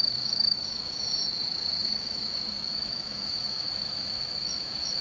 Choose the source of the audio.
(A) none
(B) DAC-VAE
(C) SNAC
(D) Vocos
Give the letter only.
B